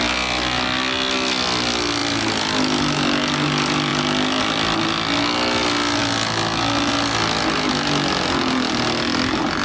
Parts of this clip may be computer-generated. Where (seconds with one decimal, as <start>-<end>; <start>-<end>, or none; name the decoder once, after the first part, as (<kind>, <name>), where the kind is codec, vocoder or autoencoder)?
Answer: none